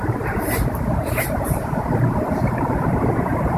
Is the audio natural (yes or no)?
no